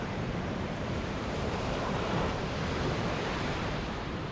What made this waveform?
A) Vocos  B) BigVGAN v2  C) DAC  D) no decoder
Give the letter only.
B